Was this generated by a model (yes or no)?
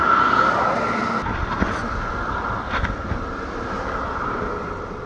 no